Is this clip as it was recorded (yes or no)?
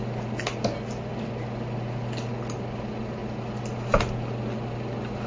yes